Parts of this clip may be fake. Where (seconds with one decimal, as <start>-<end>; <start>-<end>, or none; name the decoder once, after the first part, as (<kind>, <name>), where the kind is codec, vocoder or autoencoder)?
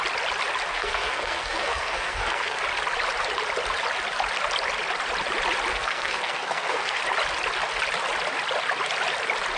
0.7-2.6 (codec, SNAC); 5.7-7.0